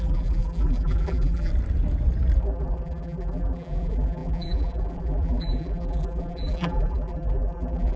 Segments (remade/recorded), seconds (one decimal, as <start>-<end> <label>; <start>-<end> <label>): 0.0-1.5 remade; 1.5-2.4 recorded; 2.4-8.0 remade